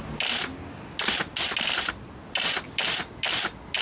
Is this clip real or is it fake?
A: real